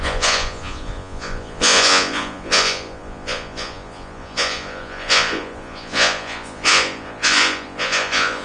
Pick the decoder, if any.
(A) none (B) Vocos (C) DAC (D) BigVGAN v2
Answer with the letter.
B